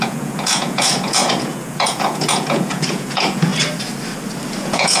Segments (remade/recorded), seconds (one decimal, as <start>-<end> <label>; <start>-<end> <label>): 0.0-3.5 remade; 3.5-4.6 recorded; 4.6-5.0 remade